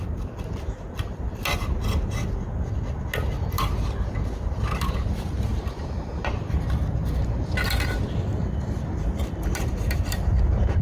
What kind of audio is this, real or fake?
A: real